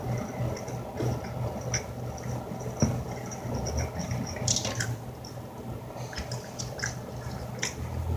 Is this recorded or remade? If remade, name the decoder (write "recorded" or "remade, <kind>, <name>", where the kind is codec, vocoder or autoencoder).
recorded